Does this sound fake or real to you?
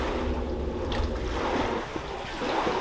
real